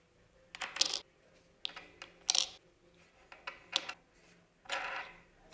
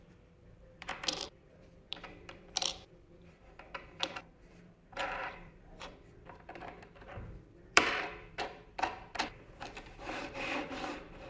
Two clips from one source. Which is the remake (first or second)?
second